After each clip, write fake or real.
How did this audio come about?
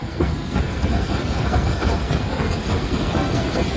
fake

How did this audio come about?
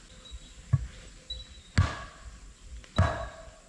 real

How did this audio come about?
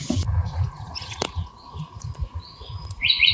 fake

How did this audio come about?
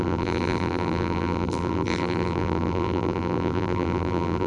fake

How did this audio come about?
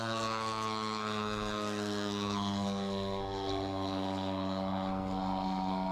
fake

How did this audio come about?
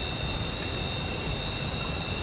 real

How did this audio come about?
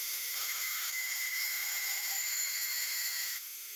fake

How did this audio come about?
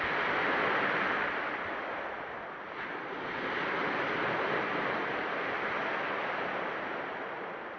real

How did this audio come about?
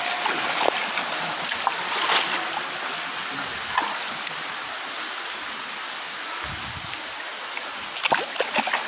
real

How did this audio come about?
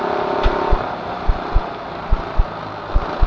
real